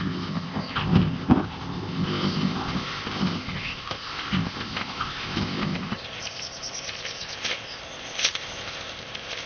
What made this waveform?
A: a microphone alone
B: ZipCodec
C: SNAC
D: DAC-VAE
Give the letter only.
B